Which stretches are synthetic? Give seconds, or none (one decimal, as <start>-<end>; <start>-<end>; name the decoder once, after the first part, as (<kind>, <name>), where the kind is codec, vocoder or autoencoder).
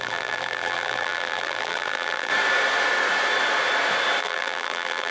0.0-2.3 (vocoder, BigVGAN v2); 4.2-5.1